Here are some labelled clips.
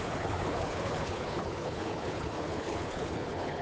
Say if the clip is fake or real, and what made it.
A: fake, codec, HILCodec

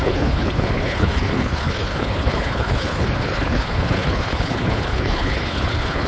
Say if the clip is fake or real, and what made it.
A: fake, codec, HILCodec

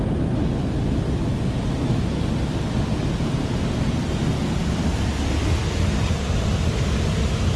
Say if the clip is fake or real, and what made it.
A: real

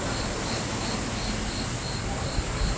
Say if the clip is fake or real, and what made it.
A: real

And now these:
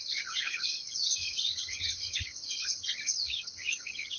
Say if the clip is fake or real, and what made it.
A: fake, codec, HILCodec